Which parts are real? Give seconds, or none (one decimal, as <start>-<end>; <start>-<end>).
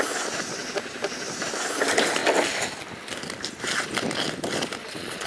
0.0-4.8